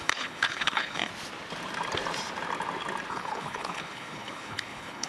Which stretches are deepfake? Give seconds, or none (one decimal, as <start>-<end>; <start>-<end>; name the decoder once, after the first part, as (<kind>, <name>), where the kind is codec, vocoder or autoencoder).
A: 0.0-1.1 (codec, HILCodec); 3.1-5.1